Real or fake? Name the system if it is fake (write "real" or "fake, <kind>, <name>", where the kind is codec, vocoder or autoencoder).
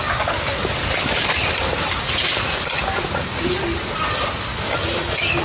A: real